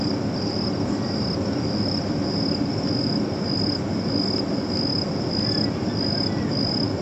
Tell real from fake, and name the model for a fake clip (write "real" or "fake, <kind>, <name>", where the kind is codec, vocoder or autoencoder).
real